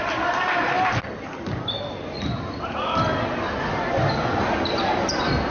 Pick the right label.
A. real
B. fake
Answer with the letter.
A